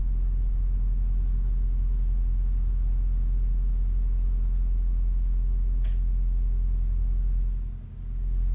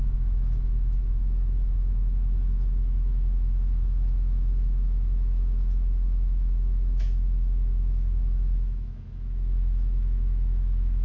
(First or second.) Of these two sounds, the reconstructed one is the second